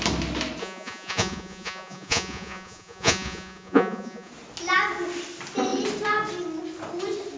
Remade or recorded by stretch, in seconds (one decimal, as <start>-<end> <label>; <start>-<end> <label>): 0.0-0.6 recorded; 0.6-4.3 remade; 4.3-7.4 recorded